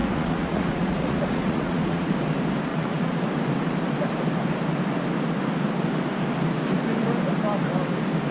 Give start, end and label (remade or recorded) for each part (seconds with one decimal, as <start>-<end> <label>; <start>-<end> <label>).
0.0-2.1 remade; 2.1-2.7 recorded; 2.7-3.3 remade; 3.3-8.3 recorded